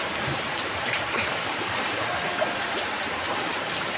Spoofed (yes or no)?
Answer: yes